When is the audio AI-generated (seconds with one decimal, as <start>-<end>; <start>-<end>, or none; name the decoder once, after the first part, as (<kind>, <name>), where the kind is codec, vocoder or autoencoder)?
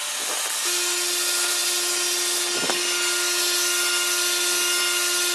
none